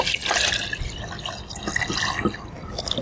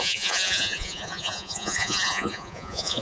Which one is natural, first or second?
first